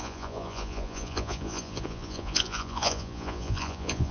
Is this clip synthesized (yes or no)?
yes